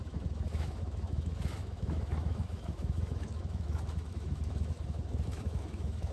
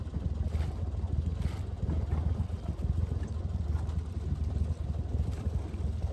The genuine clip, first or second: second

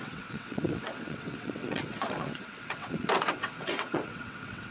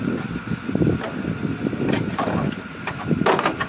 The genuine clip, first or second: second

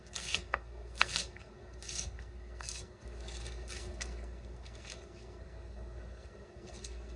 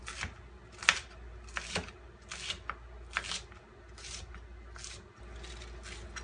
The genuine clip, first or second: second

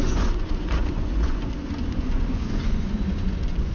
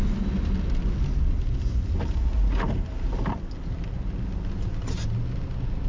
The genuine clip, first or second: second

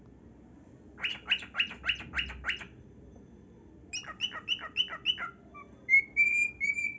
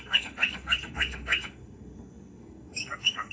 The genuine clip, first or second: first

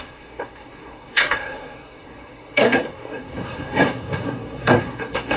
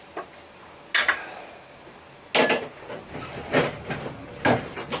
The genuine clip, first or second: second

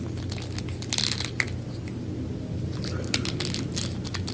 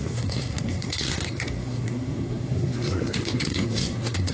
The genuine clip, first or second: first